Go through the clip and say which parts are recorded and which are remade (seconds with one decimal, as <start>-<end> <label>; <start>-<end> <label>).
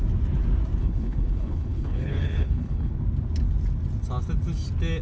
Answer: 0.0-0.8 recorded; 0.8-2.9 remade; 2.9-5.0 recorded